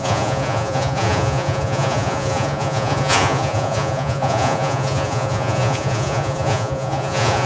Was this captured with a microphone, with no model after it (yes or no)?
no